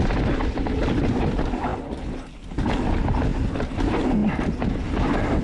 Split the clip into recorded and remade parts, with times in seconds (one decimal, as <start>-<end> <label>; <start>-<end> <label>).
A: 0.0-5.4 recorded